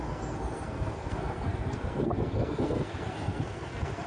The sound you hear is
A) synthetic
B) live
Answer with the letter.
A